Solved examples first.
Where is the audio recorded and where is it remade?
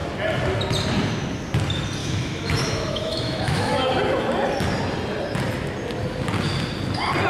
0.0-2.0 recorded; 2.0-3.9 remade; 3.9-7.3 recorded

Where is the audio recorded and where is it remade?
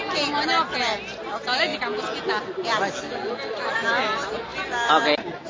0.0-5.5 recorded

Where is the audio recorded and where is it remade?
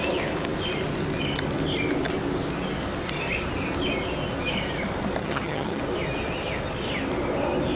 0.0-5.2 recorded; 5.2-5.8 remade; 5.8-7.8 recorded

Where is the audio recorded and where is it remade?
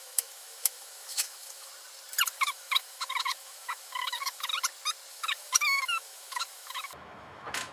0.0-1.7 remade; 1.7-2.3 recorded; 2.3-4.5 remade; 4.5-5.1 recorded; 5.1-7.7 remade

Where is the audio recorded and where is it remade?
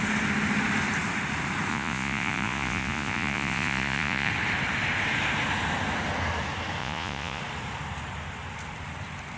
0.0-1.7 recorded; 1.7-4.3 remade; 4.3-6.8 recorded; 6.8-7.4 remade; 7.4-9.4 recorded